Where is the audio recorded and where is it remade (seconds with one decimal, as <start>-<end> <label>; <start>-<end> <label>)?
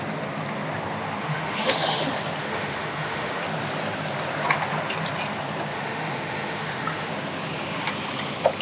0.0-1.2 recorded; 1.2-2.0 remade; 2.0-2.4 recorded; 2.4-3.4 remade; 3.4-5.7 recorded; 5.7-7.1 remade; 7.1-8.6 recorded